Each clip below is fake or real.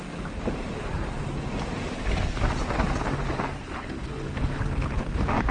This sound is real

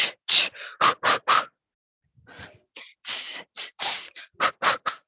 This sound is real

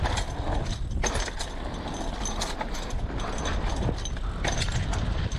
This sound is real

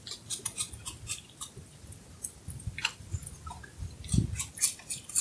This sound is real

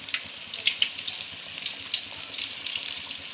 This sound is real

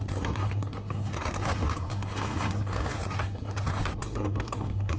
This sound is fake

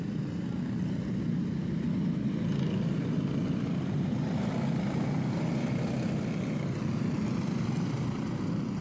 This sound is real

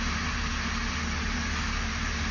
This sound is real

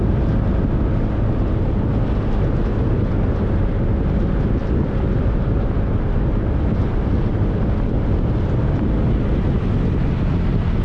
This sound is real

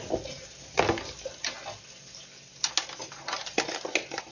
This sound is real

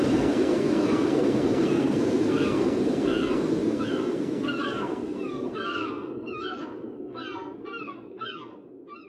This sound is fake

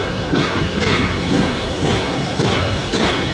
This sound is fake